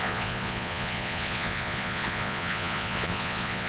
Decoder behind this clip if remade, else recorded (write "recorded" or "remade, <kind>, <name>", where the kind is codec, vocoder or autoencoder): remade, vocoder, Vocos